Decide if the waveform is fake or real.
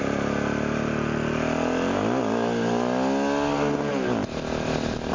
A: real